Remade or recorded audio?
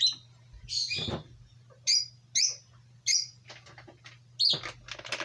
recorded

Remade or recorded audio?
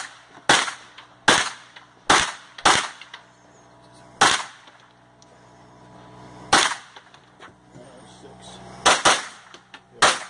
recorded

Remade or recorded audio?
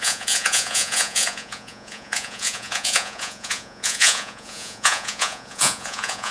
remade